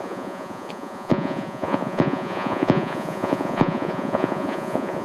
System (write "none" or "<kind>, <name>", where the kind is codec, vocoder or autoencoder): vocoder, Vocos